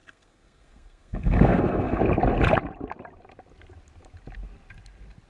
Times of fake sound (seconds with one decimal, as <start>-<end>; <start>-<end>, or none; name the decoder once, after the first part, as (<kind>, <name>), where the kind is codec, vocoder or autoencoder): 0.0-2.0 (codec, SNAC)

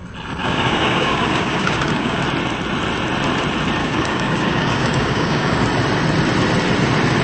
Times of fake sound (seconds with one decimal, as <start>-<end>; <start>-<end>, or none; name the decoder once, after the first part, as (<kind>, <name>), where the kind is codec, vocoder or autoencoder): 0.4-2.2 (codec, DAC); 3.8-5.6

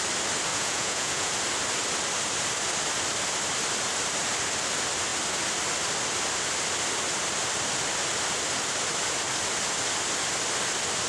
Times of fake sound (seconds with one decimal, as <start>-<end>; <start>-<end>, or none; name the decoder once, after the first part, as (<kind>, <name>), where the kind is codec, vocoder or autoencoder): 0.5-1.3 (vocoder, Vocos)